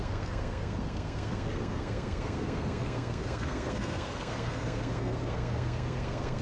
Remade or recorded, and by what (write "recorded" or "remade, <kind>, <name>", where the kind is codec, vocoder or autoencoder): remade, codec, SNAC